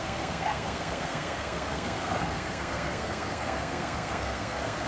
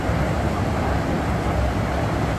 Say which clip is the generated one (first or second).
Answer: first